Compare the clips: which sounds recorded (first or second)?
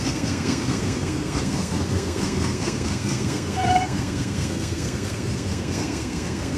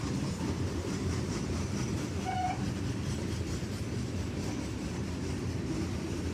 second